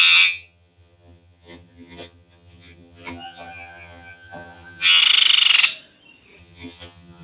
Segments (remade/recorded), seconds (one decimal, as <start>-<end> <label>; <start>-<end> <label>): 0.0-5.0 remade; 5.0-6.4 recorded; 6.4-7.2 remade